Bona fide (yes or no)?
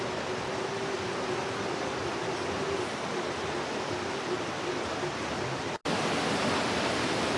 yes